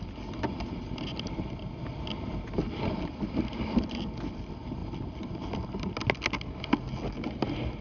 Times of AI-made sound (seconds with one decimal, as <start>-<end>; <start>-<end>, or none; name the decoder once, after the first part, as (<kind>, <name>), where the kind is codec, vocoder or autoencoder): none